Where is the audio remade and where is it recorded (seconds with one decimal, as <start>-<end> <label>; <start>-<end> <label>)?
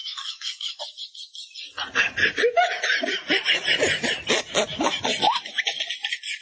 0.0-0.8 remade; 0.8-6.4 recorded